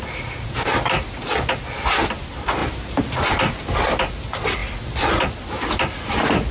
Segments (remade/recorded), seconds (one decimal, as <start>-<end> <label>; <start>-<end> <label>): 0.0-2.6 recorded; 2.6-3.4 remade; 3.4-6.5 recorded